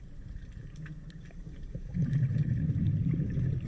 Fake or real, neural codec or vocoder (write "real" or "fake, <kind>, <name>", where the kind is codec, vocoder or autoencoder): real